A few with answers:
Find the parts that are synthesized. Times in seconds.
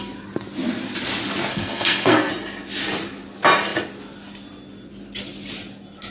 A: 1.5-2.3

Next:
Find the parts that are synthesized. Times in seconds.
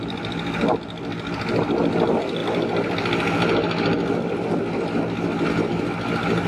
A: none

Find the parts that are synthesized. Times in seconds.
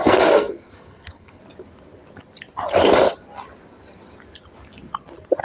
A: 0.0-1.4